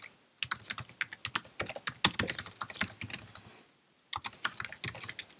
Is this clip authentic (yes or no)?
yes